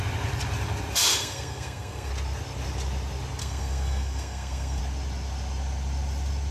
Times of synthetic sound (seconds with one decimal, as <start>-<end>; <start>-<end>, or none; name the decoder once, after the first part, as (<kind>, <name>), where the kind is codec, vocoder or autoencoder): 1.1-2.1 (codec, SNAC); 3.4-4.8